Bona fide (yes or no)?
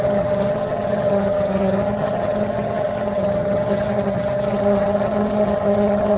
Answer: no